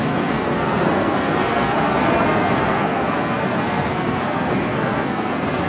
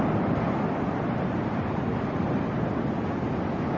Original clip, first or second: second